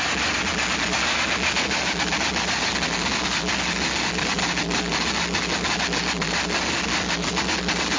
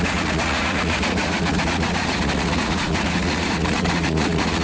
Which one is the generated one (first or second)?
second